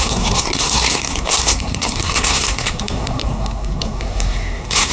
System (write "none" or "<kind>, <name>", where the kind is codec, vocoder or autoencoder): codec, SNAC